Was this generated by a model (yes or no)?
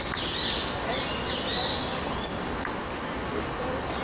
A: no